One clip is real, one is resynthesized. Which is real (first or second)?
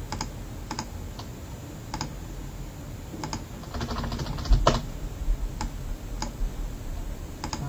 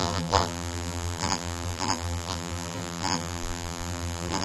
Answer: first